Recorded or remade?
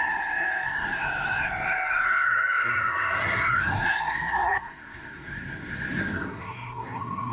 remade